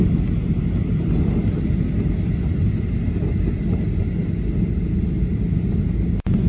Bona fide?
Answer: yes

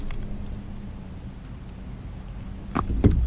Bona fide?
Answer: yes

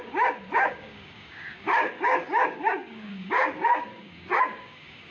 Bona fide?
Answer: no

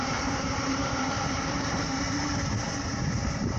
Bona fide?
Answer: no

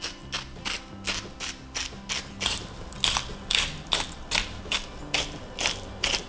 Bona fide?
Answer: yes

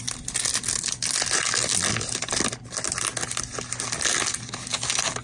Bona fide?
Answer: yes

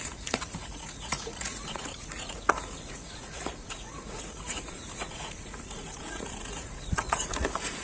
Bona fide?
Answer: no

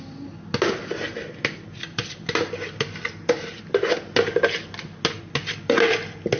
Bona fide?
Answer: yes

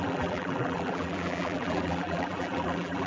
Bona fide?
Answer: no